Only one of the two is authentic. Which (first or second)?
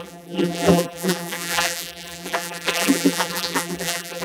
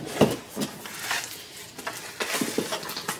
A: second